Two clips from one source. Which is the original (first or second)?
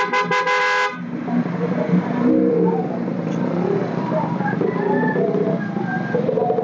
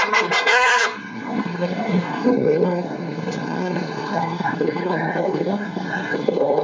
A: first